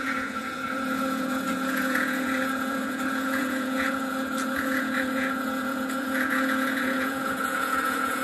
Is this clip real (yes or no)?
no